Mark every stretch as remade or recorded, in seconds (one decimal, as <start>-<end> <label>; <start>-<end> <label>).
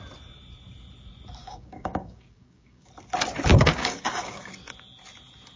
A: 0.0-1.4 recorded; 1.4-2.9 remade; 2.9-3.5 recorded; 3.5-4.5 remade; 4.5-5.6 recorded